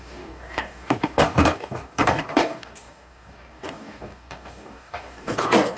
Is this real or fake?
fake